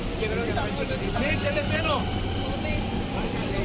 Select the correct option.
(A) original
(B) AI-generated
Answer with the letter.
A